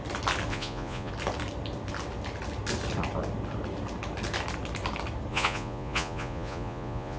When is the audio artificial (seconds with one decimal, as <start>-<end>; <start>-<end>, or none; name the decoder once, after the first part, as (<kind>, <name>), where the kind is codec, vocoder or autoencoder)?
0.5-1.1 (vocoder, Vocos); 5.3-7.2